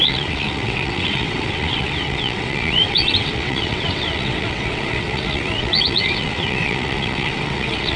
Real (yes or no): no